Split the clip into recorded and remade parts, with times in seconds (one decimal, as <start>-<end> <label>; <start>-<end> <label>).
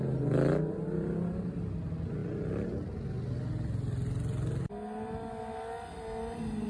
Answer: 0.0-6.7 recorded